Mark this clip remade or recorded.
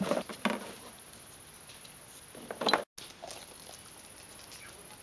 recorded